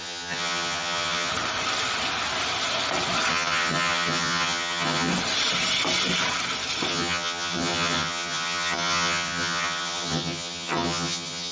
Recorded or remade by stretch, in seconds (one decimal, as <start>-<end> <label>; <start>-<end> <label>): 0.0-1.3 remade; 1.3-3.3 recorded; 3.3-5.1 remade; 5.1-6.9 recorded; 6.9-11.5 remade